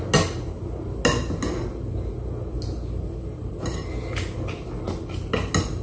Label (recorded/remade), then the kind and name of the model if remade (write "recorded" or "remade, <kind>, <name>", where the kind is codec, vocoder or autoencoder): recorded